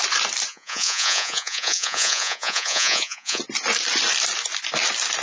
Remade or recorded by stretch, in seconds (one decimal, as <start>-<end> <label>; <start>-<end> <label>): 0.0-0.5 recorded; 0.5-3.4 remade; 3.4-5.2 recorded

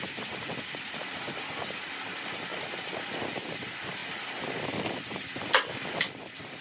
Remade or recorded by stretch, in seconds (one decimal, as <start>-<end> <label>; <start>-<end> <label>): 0.0-6.6 recorded

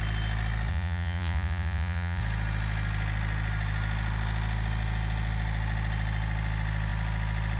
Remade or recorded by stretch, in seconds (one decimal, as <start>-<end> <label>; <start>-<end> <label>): 0.0-0.7 recorded; 0.7-2.2 remade; 2.2-7.6 recorded

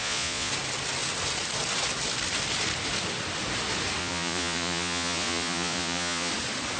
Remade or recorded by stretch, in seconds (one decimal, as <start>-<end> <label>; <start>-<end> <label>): 0.0-0.5 remade; 0.5-4.0 recorded; 4.0-6.3 remade; 6.3-6.8 recorded